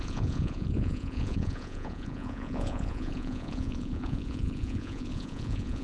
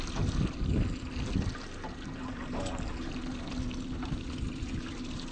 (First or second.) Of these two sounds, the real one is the second